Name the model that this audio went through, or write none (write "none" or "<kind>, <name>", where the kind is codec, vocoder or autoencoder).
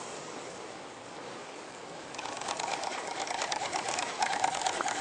codec, DAC